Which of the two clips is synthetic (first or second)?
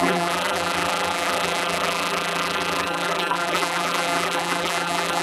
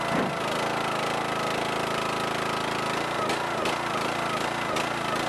first